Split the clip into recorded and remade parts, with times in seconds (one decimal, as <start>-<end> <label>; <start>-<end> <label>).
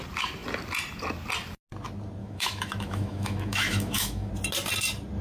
0.0-2.2 recorded; 2.2-4.3 remade; 4.3-5.2 recorded